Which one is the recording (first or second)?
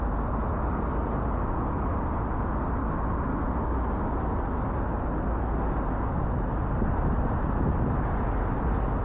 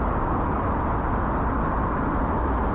first